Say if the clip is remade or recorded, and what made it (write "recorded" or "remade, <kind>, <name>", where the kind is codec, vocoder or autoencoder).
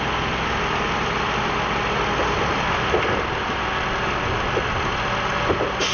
recorded